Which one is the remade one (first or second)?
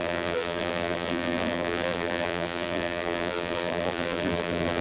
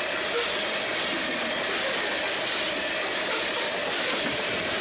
first